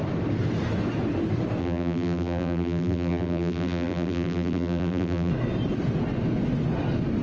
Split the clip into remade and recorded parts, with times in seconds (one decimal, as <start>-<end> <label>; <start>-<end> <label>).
0.0-1.6 recorded; 1.6-5.3 remade; 5.3-7.2 recorded

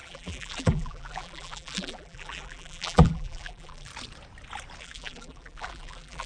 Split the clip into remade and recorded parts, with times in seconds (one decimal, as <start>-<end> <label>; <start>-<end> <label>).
0.0-3.9 remade; 3.9-4.8 recorded; 4.8-6.3 remade